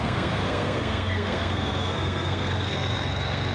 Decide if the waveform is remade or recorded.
remade